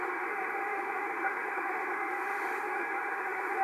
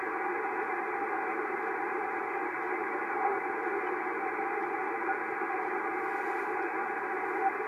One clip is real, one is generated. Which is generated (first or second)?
first